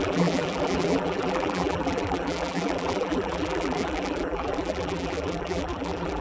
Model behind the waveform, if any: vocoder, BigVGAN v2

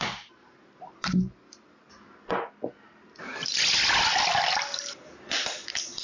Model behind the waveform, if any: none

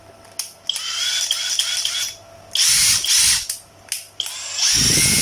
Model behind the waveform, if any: none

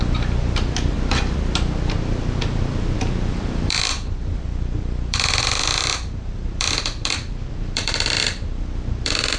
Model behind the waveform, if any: vocoder, BigVGAN v2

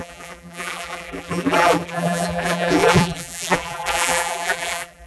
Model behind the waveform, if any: vocoder, BigVGAN v2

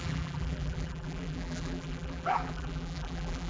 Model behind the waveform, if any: vocoder, BigVGAN v2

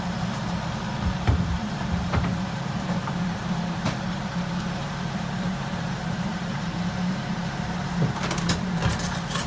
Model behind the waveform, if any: vocoder, BigVGAN v2